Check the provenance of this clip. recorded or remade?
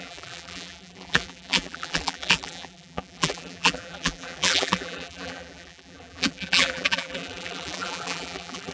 remade